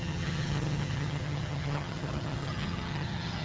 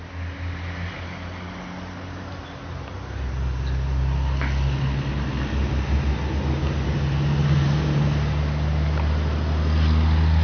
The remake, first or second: first